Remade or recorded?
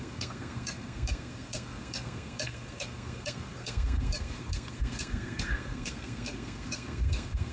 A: remade